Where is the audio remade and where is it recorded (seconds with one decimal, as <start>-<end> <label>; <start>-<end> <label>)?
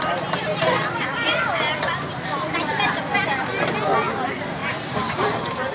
0.0-0.4 recorded; 0.4-3.8 remade; 3.8-4.6 recorded; 4.6-5.7 remade